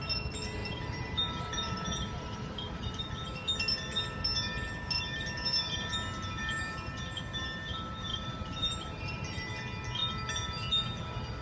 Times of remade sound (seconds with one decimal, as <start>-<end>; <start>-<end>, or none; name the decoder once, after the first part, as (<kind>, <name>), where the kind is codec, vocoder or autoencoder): 0.6-3.0 (vocoder, BigVGAN v2); 8.1-9.5